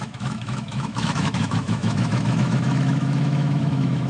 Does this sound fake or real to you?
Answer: fake